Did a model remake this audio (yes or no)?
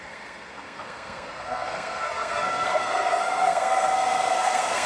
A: yes